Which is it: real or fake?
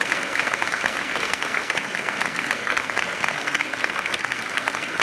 fake